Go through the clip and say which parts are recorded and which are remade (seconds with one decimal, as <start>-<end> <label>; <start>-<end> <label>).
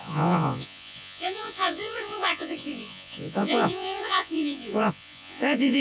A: 0.0-5.8 remade